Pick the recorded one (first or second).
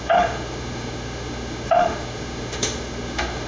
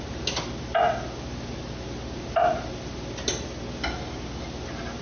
second